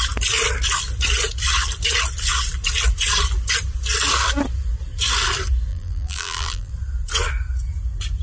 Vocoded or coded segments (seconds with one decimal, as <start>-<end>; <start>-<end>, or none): 5.7-6.7